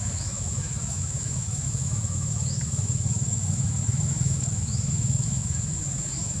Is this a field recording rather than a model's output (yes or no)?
no